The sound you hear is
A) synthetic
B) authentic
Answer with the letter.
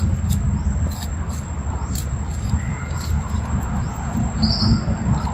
B